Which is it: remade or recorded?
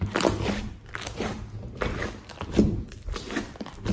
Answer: recorded